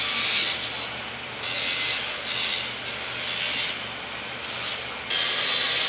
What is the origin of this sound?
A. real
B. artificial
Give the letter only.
A